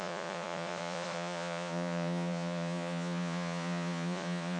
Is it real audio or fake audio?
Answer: fake